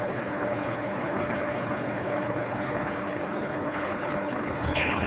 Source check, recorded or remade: remade